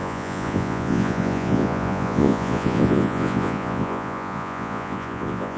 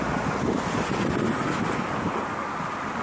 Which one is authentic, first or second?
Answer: second